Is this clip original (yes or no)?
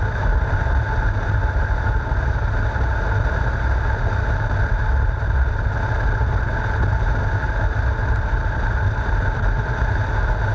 yes